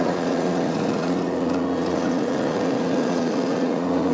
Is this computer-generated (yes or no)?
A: yes